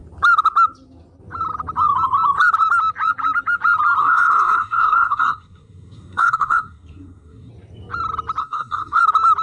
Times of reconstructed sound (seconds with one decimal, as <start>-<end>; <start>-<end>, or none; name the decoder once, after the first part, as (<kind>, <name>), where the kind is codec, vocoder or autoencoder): 4.0-7.5 (codec, SNAC); 8.4-9.0